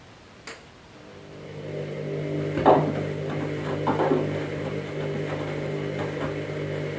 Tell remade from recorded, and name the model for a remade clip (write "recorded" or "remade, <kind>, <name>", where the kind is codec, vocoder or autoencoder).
recorded